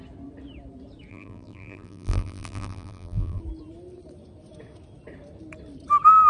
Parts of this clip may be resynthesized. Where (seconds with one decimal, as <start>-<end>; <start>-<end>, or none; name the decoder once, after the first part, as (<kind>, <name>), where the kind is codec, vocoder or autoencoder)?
1.1-3.4 (vocoder, BigVGAN v2)